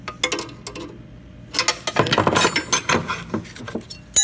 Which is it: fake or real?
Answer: real